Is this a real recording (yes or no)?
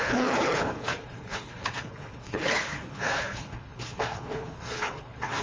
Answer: no